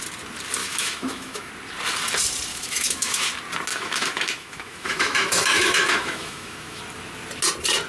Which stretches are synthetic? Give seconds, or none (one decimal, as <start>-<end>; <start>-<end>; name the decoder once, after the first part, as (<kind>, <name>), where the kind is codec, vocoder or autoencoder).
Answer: 0.6-1.5 (autoencoder, DAC-VAE); 2.5-3.3; 3.7-6.8